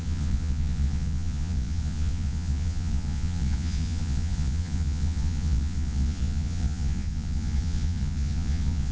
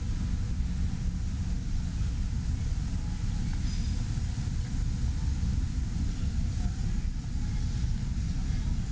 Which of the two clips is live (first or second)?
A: second